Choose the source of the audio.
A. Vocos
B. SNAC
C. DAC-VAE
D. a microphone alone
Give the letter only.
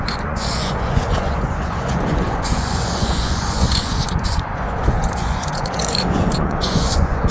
A